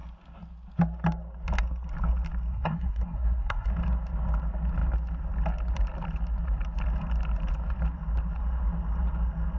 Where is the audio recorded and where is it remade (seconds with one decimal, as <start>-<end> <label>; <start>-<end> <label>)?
0.0-2.5 recorded; 2.5-3.7 remade; 3.7-9.6 recorded